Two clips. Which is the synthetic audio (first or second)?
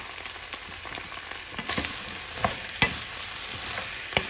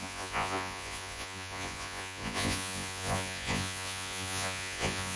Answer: second